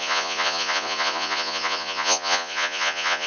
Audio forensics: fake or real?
fake